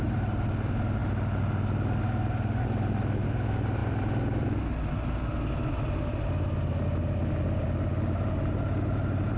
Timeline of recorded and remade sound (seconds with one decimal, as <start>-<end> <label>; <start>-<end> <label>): 0.0-9.4 recorded